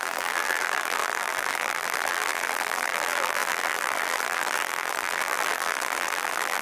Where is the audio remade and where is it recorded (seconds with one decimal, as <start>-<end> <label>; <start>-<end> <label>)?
0.0-6.6 remade